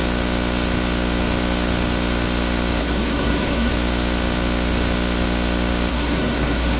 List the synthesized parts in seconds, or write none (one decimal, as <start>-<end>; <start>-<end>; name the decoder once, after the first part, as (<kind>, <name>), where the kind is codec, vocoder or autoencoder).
2.8-3.7 (codec, SNAC); 5.9-6.8